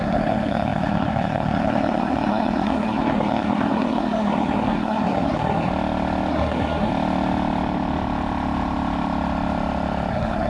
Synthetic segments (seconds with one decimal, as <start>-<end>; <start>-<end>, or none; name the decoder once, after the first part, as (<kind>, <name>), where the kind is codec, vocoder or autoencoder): 0.0-5.7 (codec, SNAC); 6.3-6.9; 10.1-10.5